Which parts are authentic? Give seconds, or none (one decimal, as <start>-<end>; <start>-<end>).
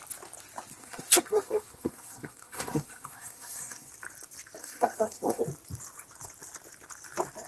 0.0-0.8; 3.9-4.6; 5.4-7.5